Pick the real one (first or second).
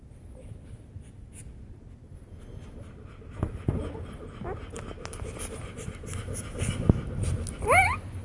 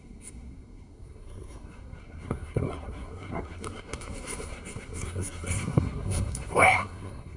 first